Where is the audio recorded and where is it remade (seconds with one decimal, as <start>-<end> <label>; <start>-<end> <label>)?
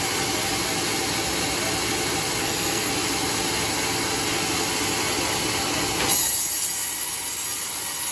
0.0-2.4 recorded; 2.4-2.9 remade; 2.9-8.1 recorded